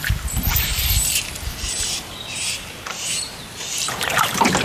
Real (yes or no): no